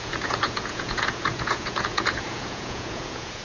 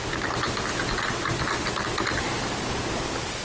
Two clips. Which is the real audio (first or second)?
second